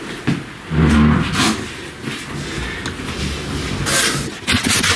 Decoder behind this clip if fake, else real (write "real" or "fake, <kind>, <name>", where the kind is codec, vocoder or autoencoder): real